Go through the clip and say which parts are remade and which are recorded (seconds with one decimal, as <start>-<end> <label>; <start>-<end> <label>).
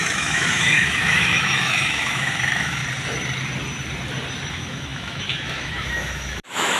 0.0-2.8 remade; 2.8-4.5 recorded; 4.5-6.8 remade